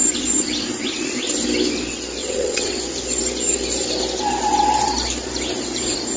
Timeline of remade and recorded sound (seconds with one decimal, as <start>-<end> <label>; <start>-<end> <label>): 0.0-2.2 recorded; 2.2-2.8 remade; 2.8-6.2 recorded